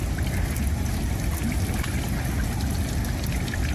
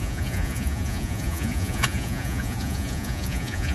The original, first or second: first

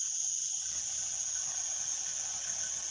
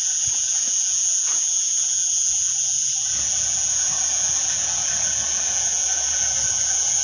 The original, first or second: first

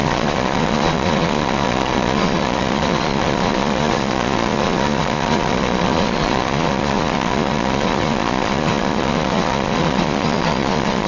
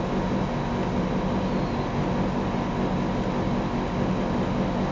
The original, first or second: second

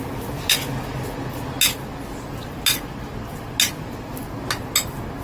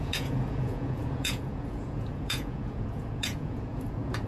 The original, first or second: first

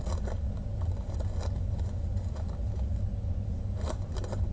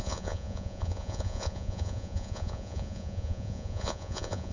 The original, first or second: first